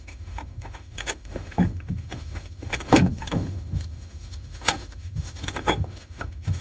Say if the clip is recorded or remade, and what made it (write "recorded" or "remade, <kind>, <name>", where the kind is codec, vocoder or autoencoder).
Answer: remade, autoencoder, DAC-VAE